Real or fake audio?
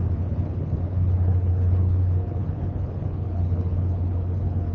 fake